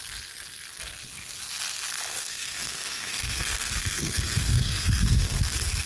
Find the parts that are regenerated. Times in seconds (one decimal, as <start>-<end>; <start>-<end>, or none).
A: 2.1-5.4